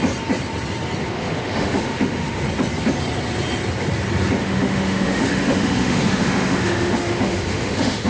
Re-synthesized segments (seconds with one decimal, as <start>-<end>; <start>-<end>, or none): 1.0-2.4; 4.4-8.1